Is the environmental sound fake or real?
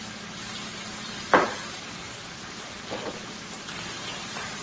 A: fake